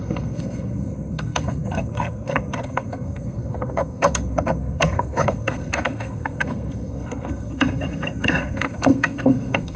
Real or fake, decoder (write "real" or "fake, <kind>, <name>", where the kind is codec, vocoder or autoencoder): fake, codec, SNAC